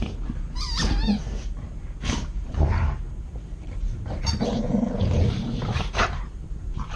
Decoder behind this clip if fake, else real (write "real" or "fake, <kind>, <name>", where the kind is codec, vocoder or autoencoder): fake, vocoder, BigVGAN v2